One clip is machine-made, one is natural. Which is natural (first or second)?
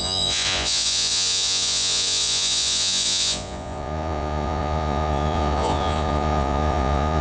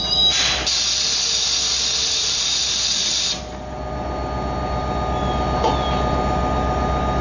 second